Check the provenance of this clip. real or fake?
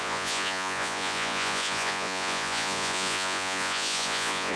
fake